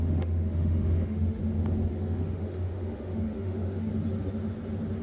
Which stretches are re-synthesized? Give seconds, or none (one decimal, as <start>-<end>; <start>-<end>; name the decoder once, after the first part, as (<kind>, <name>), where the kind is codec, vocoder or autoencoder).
0.0-1.4 (autoencoder, DAC-VAE); 1.9-3.9